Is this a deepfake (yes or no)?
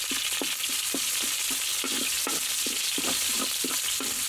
no